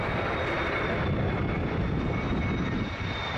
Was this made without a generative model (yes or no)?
yes